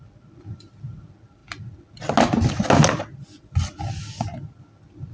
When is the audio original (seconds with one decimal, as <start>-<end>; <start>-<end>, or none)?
0.0-5.1